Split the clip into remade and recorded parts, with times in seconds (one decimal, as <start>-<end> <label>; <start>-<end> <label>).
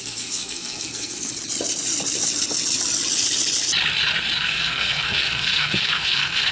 0.0-1.3 remade; 1.3-4.4 recorded; 4.4-6.5 remade